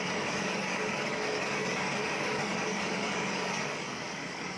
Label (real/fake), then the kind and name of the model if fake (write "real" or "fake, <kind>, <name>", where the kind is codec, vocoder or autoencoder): fake, codec, DAC